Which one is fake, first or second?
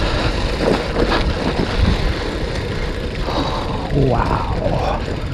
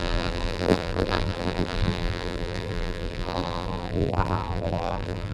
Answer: second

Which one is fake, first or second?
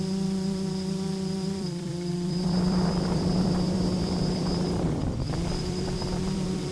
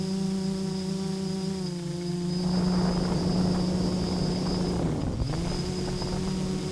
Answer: first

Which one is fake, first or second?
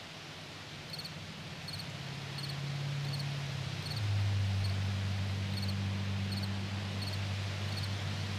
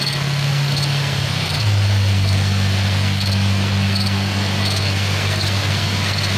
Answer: second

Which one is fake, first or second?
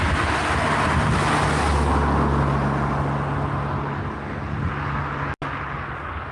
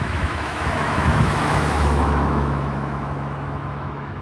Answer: second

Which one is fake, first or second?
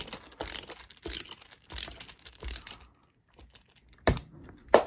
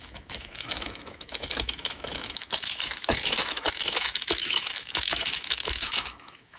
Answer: second